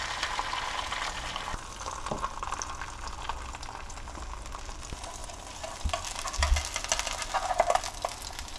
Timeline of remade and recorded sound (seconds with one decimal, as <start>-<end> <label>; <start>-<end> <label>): 0.0-8.6 recorded